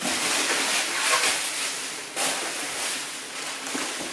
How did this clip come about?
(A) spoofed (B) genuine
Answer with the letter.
B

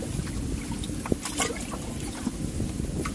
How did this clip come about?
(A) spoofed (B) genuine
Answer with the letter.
B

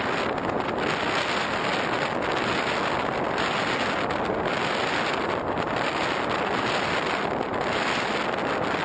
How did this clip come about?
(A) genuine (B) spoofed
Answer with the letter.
A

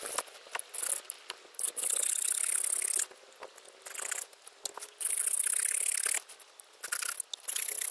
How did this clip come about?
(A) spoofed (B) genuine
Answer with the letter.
B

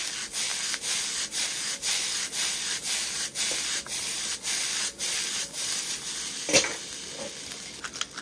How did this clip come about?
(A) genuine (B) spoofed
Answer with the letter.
A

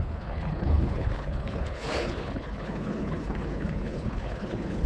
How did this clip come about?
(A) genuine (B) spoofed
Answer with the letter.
B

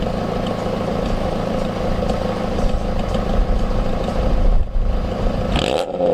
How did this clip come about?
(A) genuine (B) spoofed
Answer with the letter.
A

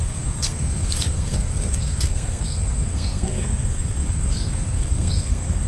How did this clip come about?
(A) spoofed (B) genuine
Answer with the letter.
A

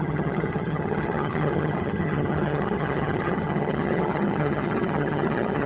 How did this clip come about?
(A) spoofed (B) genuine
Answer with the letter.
A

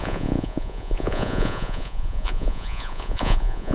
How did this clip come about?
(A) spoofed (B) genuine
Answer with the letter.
A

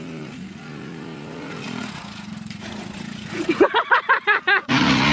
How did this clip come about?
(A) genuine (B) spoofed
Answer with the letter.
B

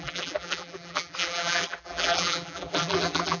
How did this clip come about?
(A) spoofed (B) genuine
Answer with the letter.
A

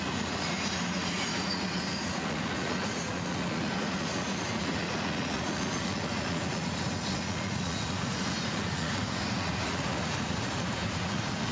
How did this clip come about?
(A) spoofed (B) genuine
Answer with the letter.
A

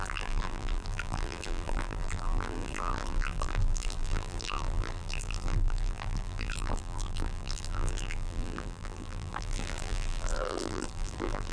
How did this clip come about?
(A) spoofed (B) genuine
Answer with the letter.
A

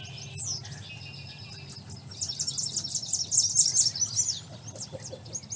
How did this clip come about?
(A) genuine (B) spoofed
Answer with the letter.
A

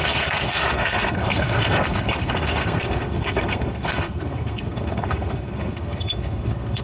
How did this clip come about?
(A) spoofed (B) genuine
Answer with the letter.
A